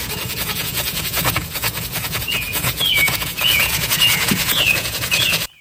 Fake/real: fake